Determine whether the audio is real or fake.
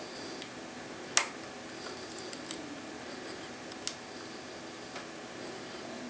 real